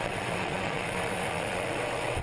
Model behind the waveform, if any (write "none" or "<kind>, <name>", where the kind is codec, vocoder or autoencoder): vocoder, WaveNeXt